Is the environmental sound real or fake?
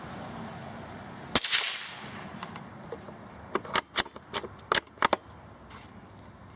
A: real